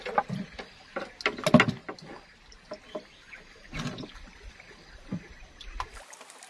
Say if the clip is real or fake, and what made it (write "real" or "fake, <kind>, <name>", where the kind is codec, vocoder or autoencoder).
real